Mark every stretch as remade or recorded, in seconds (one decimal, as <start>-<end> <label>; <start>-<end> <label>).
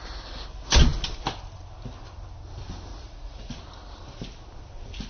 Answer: 0.0-2.9 recorded; 2.9-3.5 remade; 3.5-5.1 recorded